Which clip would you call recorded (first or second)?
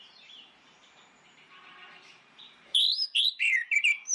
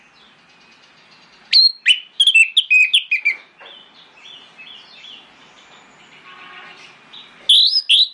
second